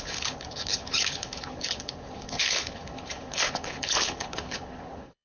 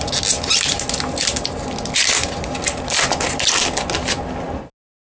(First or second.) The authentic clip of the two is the second